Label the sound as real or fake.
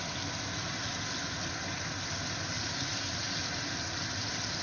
real